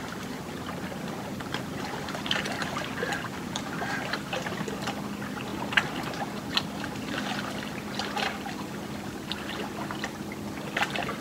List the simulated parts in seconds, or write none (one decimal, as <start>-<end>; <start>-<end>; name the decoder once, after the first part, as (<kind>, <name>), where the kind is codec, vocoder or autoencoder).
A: none